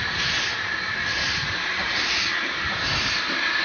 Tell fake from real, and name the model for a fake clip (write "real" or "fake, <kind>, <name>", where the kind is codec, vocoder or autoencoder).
fake, vocoder, BigVGAN v2